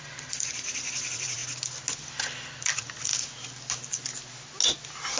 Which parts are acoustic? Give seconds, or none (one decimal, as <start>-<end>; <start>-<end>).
1.4-2.5; 3.1-5.2